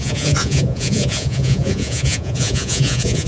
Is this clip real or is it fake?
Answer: fake